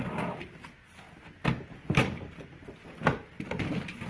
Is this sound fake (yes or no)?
no